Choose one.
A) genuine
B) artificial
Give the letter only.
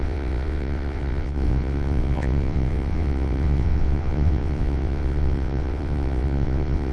B